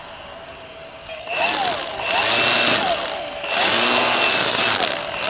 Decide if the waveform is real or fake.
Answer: real